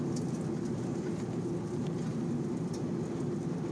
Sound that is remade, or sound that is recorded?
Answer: recorded